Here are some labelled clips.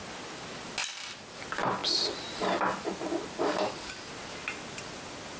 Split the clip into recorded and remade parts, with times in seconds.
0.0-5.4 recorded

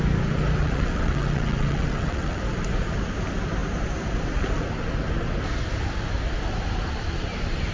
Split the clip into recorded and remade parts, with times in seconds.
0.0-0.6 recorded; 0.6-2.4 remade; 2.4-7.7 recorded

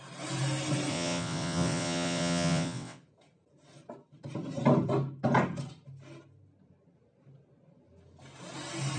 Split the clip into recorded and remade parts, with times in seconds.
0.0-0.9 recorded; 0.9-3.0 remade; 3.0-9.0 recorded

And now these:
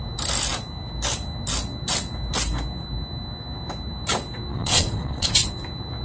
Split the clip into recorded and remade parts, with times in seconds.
0.0-4.5 recorded; 4.5-5.5 remade; 5.5-6.0 recorded

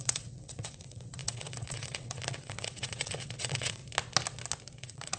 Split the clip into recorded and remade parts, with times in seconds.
0.0-3.8 remade; 3.8-4.8 recorded; 4.8-5.2 remade

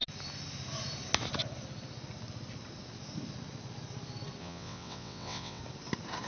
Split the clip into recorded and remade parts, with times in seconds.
0.0-4.4 recorded; 4.4-5.6 remade; 5.6-6.3 recorded